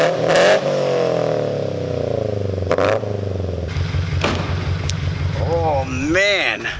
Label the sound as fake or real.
real